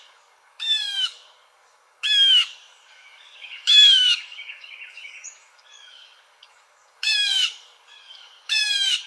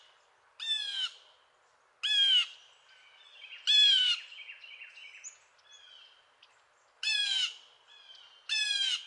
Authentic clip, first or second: second